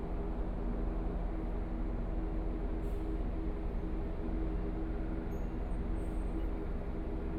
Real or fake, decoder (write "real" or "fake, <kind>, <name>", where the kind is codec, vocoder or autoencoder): real